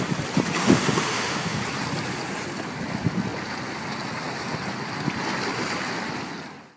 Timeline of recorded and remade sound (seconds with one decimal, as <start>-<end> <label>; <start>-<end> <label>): 0.0-0.6 recorded; 0.6-1.6 remade; 1.6-6.8 recorded